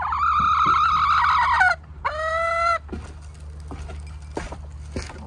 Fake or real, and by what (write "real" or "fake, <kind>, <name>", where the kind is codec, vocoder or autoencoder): real